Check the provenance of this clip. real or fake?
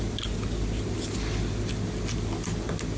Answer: real